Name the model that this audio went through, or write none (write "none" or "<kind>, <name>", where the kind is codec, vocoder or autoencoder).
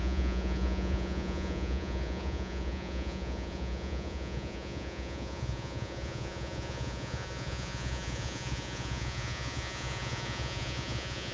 vocoder, Vocos